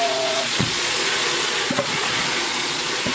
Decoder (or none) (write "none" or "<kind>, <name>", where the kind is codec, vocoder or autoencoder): vocoder, Vocos